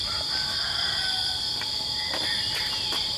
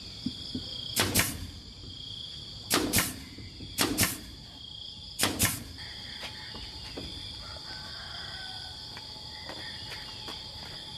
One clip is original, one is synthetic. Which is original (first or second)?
first